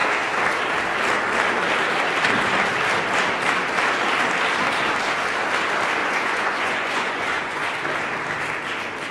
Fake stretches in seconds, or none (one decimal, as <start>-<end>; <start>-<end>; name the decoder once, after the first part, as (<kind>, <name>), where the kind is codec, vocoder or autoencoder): 6.0-7.7 (vocoder, Vocos)